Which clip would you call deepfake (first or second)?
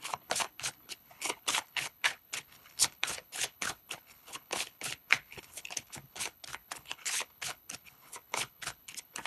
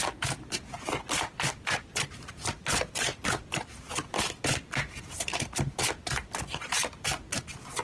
first